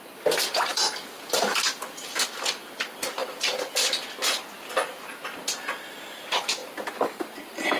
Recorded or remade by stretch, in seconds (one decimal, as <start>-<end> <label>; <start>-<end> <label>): 0.0-0.7 recorded; 0.7-1.8 remade; 1.8-3.2 recorded; 3.2-3.9 remade; 3.9-7.8 recorded